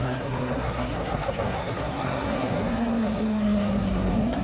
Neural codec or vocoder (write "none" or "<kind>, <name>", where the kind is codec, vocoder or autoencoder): codec, SNAC